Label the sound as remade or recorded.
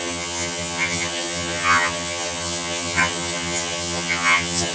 remade